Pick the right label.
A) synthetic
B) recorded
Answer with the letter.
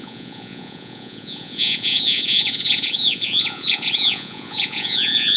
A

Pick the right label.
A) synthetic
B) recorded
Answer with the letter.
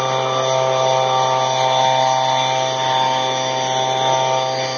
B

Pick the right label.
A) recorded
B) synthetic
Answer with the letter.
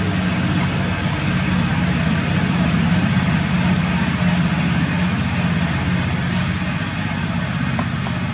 A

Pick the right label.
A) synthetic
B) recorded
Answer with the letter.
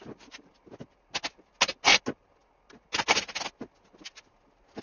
B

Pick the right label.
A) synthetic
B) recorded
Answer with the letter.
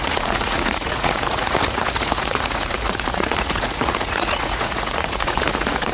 A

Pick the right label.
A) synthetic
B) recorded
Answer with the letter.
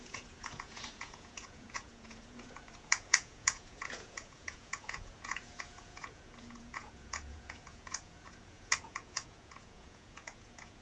A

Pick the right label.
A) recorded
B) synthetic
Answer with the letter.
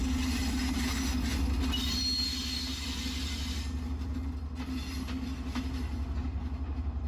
A